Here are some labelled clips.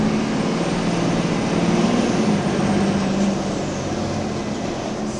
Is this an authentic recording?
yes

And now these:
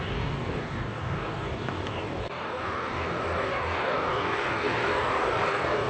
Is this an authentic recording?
no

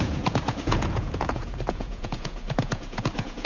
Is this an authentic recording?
no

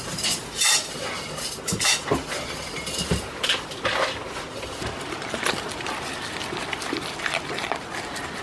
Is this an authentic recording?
yes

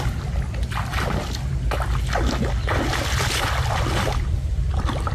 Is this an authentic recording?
yes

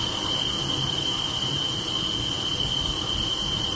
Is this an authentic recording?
yes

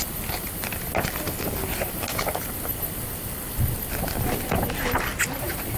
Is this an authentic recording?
yes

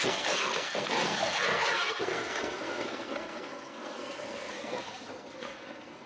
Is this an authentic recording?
no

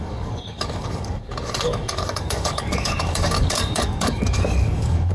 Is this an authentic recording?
no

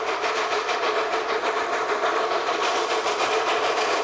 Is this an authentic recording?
no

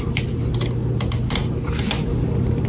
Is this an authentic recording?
yes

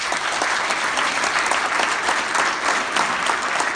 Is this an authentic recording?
yes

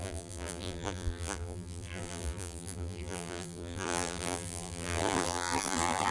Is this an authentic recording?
no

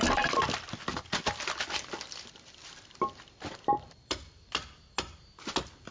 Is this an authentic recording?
yes